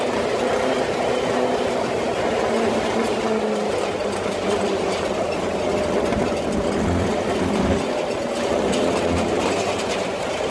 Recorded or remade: recorded